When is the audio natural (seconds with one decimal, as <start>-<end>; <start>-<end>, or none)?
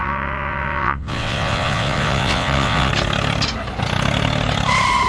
2.9-5.1